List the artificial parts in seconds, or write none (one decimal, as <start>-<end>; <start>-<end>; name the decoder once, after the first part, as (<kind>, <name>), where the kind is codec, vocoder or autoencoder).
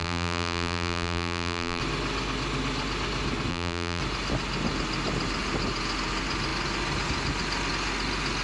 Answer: 0.0-1.8 (vocoder, BigVGAN v2); 3.5-4.0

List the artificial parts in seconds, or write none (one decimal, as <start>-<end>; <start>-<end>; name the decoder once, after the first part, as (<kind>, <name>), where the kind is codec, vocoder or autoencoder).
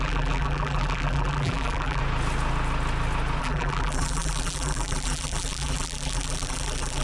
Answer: 0.0-2.0 (vocoder, BigVGAN v2); 3.4-7.0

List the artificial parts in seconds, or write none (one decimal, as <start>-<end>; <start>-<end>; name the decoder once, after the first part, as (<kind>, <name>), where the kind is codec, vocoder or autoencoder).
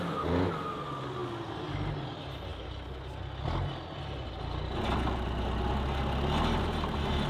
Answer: none